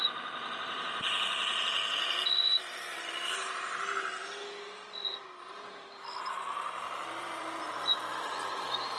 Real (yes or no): yes